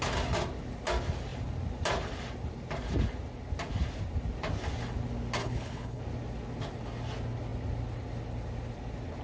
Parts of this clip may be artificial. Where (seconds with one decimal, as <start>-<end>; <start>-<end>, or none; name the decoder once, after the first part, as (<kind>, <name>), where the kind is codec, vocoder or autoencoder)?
5.4-6.0 (codec, HILCodec)